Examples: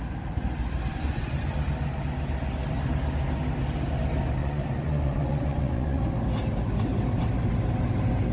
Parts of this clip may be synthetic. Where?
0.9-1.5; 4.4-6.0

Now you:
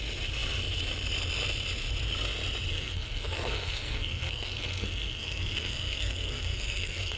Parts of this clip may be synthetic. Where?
2.7-7.2

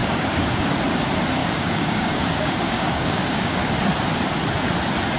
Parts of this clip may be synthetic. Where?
0.0-0.6; 1.4-3.6

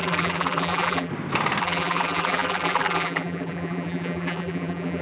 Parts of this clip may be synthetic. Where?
0.0-1.1; 1.6-5.0

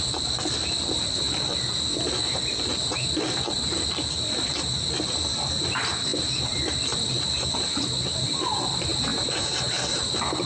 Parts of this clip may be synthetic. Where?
none

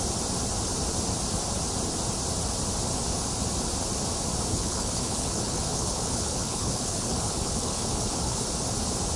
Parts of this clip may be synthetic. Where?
4.5-8.5

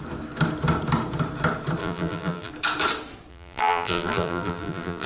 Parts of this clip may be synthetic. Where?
1.8-2.5; 3.3-5.1